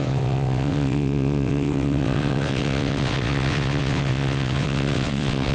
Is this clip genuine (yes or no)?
no